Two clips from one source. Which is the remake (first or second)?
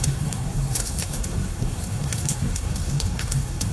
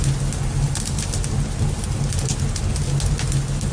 first